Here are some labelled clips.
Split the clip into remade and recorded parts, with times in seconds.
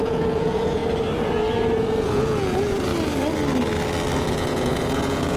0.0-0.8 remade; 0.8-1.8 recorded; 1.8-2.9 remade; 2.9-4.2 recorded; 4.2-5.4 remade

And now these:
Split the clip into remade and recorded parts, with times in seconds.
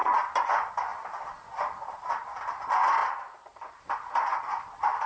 0.0-5.1 recorded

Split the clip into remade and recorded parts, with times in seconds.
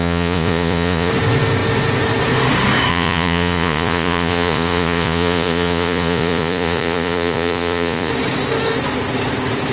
0.0-1.1 remade; 1.1-2.9 recorded; 2.9-8.1 remade; 8.1-9.7 recorded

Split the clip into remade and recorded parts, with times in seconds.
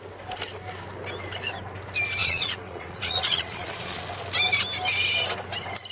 0.0-2.2 recorded; 2.2-4.0 remade; 4.0-5.9 recorded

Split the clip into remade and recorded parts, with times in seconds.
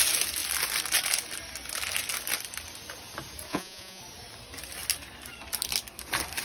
0.0-3.5 recorded; 3.5-4.0 remade; 4.0-6.4 recorded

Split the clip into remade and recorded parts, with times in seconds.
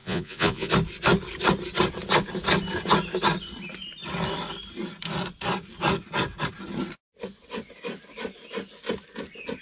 0.0-0.7 remade; 0.7-9.6 recorded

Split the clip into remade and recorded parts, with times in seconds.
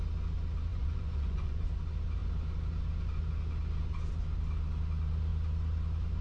0.0-0.7 recorded; 0.7-1.6 remade; 1.6-6.2 recorded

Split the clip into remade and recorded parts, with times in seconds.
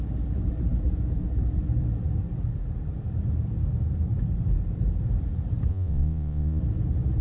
0.0-5.7 recorded; 5.7-6.6 remade; 6.6-7.2 recorded